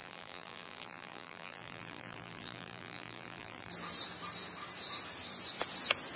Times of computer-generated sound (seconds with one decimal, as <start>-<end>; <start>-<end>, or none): 0.0-3.7